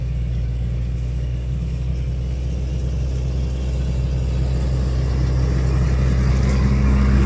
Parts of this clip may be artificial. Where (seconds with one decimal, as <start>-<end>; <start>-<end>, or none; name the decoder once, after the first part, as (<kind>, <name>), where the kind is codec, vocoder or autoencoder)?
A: 0.0-1.9 (codec, DAC); 6.3-7.3